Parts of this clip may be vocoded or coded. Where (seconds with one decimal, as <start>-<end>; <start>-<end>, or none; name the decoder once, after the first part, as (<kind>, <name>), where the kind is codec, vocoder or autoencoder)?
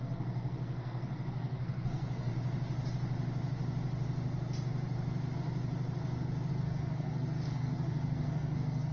0.0-2.3 (codec, SNAC); 6.5-8.9